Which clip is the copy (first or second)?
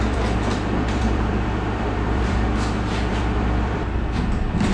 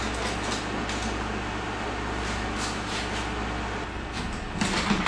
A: first